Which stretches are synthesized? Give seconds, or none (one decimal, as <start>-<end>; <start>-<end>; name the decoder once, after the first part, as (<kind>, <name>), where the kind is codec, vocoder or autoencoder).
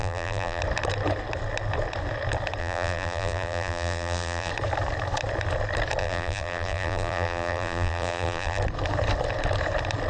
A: 0.0-0.6 (vocoder, BigVGAN v2); 2.6-4.5; 6.0-8.6